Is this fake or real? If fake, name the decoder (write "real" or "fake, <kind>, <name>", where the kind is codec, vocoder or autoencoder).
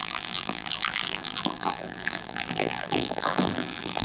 fake, vocoder, BigVGAN v2